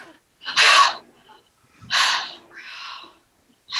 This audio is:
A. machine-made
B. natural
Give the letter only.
B